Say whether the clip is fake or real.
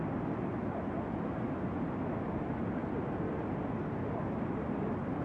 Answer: real